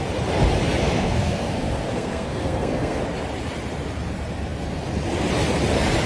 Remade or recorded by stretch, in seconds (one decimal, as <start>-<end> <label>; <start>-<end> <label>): 0.0-0.8 recorded; 0.8-3.0 remade; 3.0-6.1 recorded